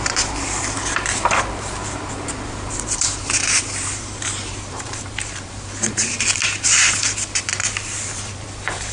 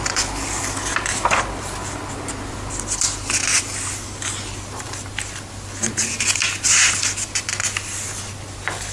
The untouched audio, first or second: second